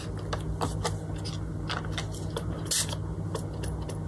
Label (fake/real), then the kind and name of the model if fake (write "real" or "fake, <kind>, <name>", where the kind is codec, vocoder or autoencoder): real